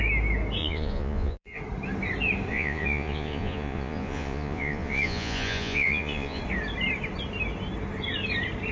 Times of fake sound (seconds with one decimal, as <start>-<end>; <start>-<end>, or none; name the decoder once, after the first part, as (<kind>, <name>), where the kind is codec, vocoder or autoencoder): 0.6-1.6 (vocoder, Vocos); 2.5-6.4

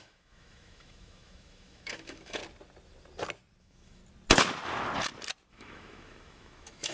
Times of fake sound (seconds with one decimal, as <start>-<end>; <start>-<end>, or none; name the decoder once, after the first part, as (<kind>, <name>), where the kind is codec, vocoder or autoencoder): 0.0-2.4 (autoencoder, DAC-VAE); 3.6-4.0; 5.5-6.9

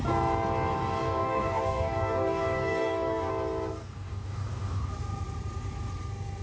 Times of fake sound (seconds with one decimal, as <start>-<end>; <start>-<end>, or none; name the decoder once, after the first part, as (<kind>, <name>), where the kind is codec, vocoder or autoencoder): 1.0-3.3 (codec, DAC); 3.8-4.9